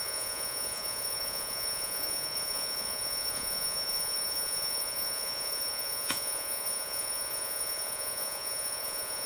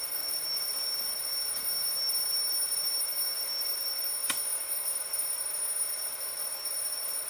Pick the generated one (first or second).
first